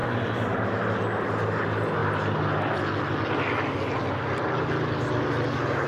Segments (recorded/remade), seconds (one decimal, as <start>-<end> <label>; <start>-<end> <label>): 0.0-5.9 recorded